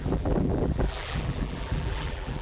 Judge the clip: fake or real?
fake